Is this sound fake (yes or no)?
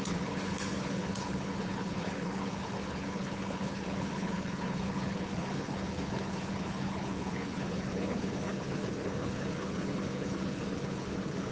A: yes